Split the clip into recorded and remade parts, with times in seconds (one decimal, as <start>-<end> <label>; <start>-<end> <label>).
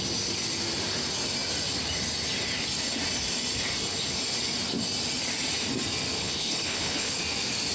0.0-6.2 recorded; 6.2-7.2 remade; 7.2-7.7 recorded